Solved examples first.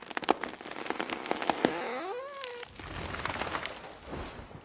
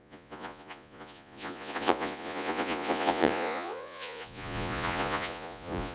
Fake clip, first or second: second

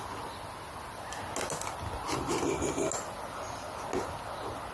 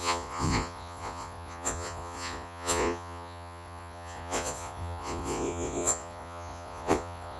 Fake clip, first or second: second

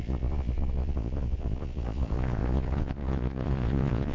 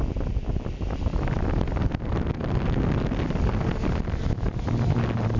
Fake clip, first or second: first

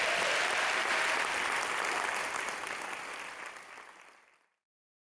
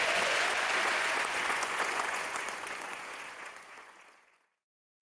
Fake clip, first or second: second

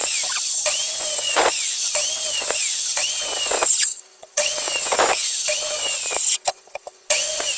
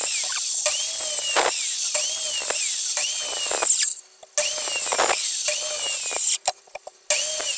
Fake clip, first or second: first